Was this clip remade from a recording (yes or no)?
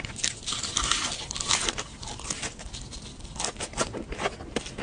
no